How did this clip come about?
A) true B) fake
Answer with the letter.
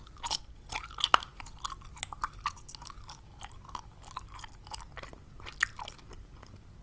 A